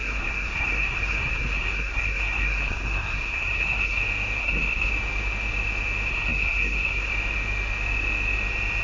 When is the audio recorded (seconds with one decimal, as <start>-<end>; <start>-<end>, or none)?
4.0-4.4; 4.9-6.1; 7.1-8.8